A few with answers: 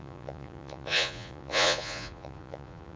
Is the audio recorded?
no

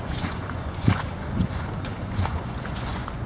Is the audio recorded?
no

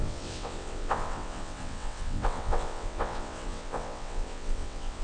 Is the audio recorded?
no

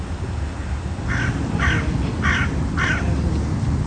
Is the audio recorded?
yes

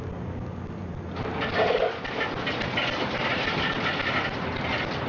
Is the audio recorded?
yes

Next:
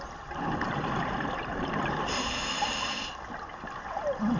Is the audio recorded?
yes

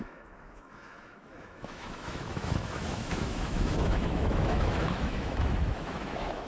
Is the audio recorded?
no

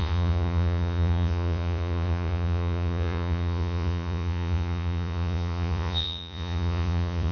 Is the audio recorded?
no